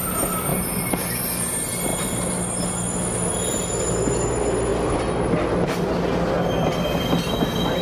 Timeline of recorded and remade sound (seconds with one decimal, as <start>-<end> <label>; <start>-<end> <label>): 0.0-0.5 recorded; 0.5-1.1 remade; 1.1-7.8 recorded